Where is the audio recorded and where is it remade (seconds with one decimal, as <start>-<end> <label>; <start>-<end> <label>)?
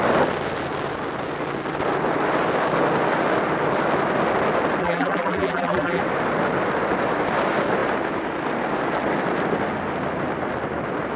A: 0.0-4.8 recorded; 4.8-6.0 remade; 6.0-11.2 recorded